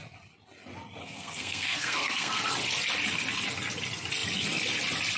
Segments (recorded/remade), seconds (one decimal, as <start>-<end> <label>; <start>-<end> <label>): 0.0-1.0 recorded; 1.0-2.4 remade; 2.4-5.2 recorded